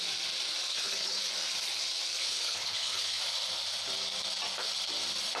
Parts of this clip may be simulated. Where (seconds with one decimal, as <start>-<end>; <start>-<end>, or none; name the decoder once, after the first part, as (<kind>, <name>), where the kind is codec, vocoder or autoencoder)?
0.7-1.3 (codec, HILCodec); 2.2-3.2